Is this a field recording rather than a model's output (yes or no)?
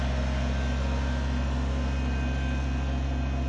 yes